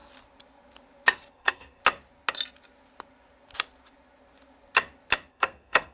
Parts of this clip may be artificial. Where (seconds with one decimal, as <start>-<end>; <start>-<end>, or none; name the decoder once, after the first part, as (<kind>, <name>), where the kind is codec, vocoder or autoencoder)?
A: 1.3-1.8 (codec, SNAC); 5.3-5.9